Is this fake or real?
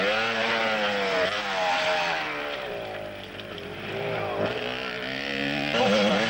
fake